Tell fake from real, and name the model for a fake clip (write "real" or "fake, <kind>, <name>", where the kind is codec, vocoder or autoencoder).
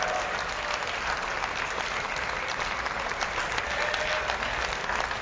real